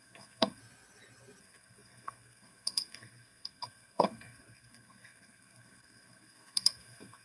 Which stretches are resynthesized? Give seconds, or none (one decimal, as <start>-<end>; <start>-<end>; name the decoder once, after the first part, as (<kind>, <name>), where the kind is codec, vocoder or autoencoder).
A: 0.0-0.6 (codec, SNAC); 1.4-7.2